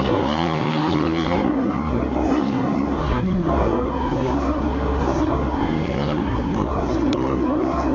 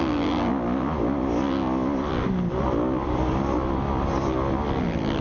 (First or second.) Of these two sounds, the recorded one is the second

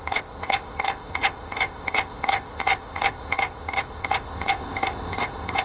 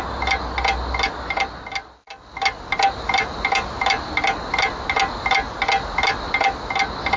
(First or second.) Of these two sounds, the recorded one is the second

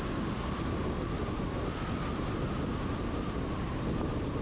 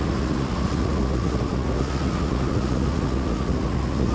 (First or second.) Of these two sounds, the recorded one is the first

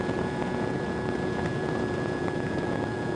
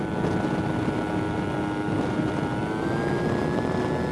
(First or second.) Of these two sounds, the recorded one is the second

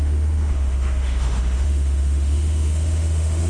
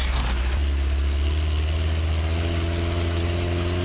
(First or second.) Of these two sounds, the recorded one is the second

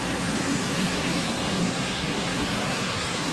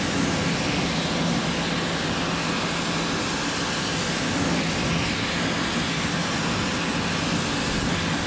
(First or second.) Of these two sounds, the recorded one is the second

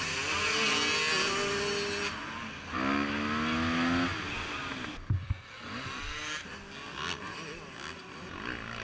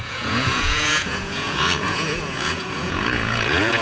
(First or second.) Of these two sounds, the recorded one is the first